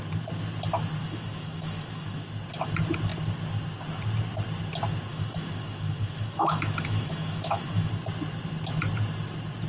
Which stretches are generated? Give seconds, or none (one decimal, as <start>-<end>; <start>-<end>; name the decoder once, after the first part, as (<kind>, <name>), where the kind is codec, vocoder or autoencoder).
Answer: 1.0-2.2 (autoencoder, DAC-VAE); 5.1-7.9